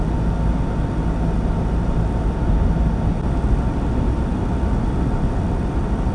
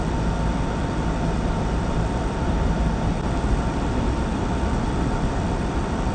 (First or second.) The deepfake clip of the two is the second